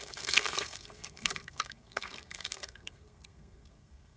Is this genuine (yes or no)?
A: no